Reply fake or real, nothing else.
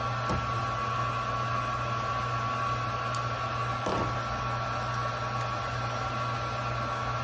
real